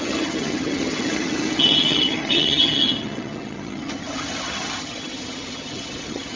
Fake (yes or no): yes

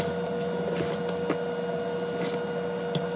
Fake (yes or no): no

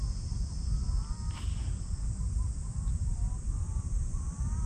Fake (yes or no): yes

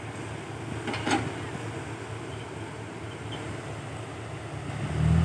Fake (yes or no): no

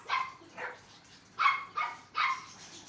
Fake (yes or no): yes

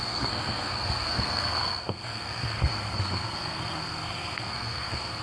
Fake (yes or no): yes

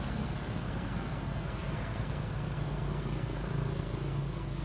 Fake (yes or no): yes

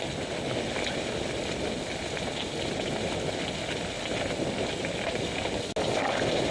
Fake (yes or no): no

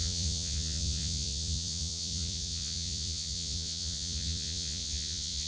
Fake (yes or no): yes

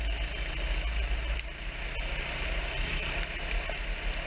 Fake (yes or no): no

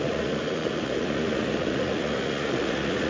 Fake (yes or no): yes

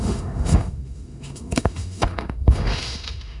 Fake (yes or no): yes